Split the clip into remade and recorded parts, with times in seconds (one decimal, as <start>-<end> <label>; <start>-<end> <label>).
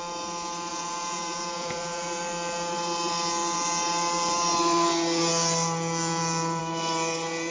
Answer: 0.0-0.7 recorded; 0.7-2.2 remade; 2.2-7.5 recorded